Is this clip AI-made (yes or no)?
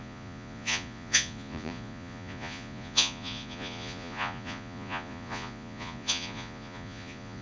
yes